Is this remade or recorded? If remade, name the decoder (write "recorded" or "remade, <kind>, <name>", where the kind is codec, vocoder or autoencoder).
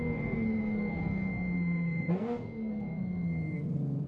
remade, codec, SNAC